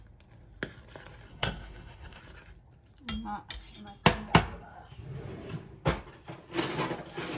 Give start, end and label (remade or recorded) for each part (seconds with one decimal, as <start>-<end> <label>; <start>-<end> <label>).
0.0-1.3 recorded; 1.3-2.2 remade; 2.2-7.4 recorded